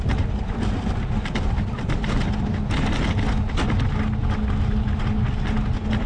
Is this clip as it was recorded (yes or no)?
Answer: yes